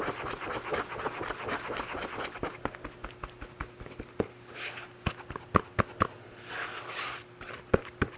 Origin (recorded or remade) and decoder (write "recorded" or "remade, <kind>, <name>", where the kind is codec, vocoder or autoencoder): recorded